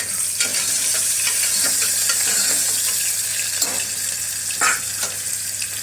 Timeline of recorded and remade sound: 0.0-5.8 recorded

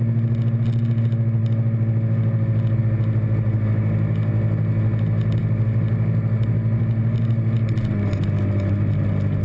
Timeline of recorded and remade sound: 0.0-9.4 recorded

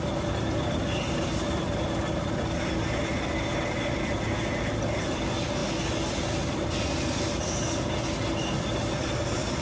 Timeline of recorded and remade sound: 0.0-9.6 recorded

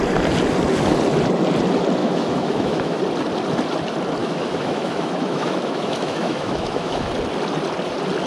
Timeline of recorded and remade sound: 0.0-2.0 recorded; 2.0-3.0 remade; 3.0-4.2 recorded; 4.2-7.1 remade; 7.1-8.3 recorded